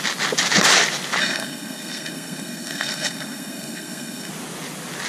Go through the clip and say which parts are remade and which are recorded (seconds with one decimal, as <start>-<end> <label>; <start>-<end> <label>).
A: 0.0-1.2 recorded; 1.2-4.3 remade; 4.3-5.1 recorded